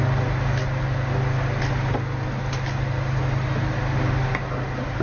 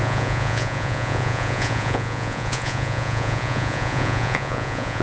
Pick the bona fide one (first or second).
first